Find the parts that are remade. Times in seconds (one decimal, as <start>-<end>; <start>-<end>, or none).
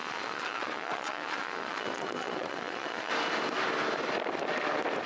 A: 0.0-3.1